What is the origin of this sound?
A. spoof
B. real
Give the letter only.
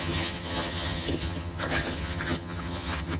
A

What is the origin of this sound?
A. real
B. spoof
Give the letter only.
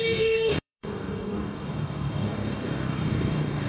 B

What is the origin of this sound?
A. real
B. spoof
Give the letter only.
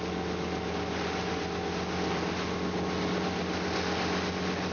A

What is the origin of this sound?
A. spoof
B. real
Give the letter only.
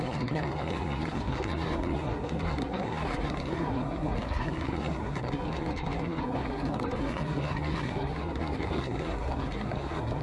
A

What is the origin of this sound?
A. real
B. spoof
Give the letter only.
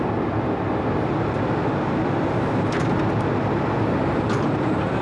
A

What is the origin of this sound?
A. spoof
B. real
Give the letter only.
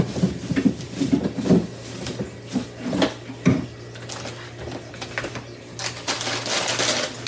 B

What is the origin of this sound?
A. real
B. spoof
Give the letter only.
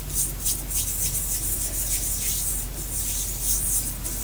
A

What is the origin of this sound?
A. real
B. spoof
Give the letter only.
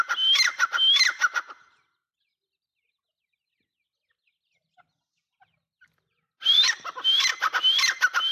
A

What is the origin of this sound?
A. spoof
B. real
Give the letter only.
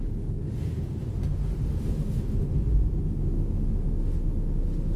A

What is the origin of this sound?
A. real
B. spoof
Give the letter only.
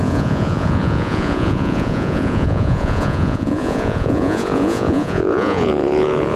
B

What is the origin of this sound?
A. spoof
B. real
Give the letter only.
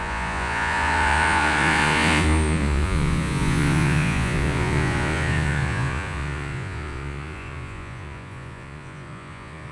A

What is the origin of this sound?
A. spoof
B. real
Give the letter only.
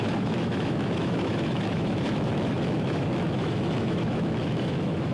A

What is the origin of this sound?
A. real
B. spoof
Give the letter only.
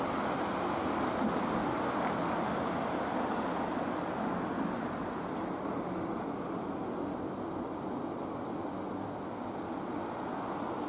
A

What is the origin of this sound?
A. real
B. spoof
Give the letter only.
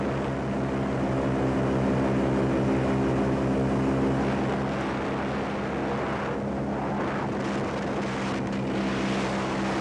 A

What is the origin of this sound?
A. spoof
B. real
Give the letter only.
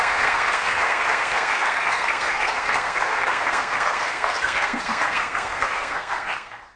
A